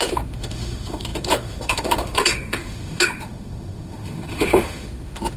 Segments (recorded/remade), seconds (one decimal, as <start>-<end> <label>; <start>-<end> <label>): 0.0-5.4 remade